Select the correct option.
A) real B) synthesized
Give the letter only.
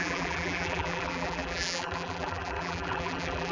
B